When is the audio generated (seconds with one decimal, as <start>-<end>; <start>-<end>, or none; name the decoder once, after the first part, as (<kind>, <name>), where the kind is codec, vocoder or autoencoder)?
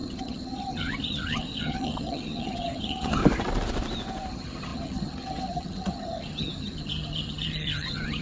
0.0-3.2 (vocoder, HiFi-GAN); 4.3-8.2